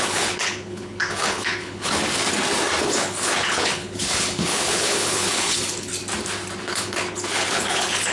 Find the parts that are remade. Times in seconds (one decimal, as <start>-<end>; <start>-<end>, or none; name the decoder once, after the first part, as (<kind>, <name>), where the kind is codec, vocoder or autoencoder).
0.0-2.0 (codec, HILCodec); 2.8-5.9; 6.6-8.1